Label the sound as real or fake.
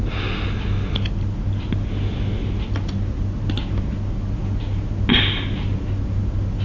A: real